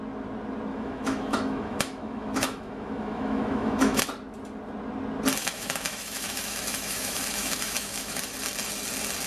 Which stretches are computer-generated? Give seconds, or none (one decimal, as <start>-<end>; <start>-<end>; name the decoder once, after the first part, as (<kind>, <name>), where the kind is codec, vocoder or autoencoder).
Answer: 0.7-4.0 (autoencoder, DAC-VAE); 5.4-8.2